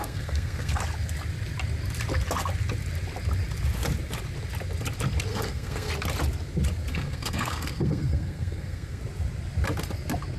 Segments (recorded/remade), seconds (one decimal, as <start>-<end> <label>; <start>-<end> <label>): 0.0-0.8 remade; 0.8-5.3 recorded; 5.3-5.9 remade; 5.9-6.9 recorded; 6.9-9.0 remade; 9.0-10.4 recorded